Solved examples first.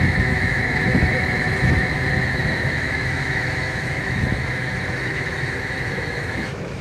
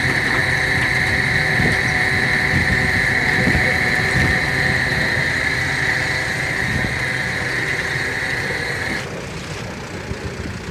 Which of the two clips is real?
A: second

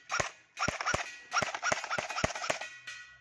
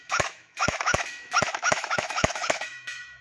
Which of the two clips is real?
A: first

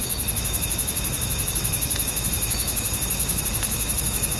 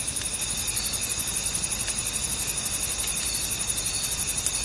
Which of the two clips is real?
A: second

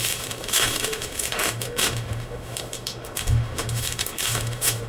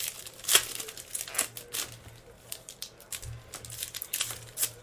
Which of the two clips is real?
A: second